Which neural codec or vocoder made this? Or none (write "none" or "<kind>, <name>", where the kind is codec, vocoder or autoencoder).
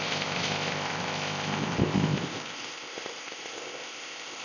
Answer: codec, ZipCodec